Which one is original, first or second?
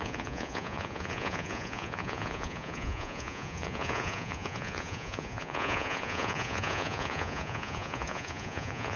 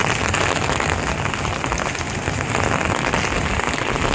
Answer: second